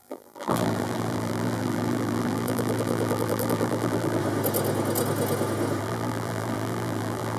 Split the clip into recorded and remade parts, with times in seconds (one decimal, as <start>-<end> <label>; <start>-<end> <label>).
0.0-4.2 remade; 4.2-5.8 recorded; 5.8-7.4 remade